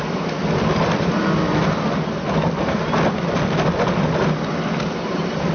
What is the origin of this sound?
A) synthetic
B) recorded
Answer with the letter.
A